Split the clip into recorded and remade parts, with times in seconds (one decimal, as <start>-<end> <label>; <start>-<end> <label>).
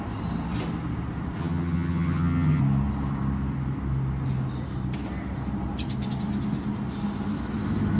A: 0.0-1.4 recorded; 1.4-2.6 remade; 2.6-8.0 recorded